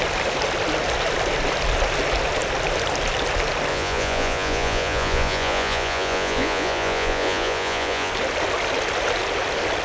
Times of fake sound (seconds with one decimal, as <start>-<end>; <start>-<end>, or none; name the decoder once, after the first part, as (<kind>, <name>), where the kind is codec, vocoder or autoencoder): 3.7-8.1 (vocoder, Vocos)